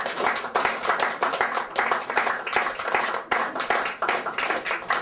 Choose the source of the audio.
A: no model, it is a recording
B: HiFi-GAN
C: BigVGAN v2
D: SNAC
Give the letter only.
A